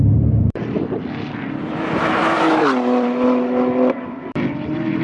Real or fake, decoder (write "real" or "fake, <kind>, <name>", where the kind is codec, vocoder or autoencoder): fake, vocoder, BigVGAN v2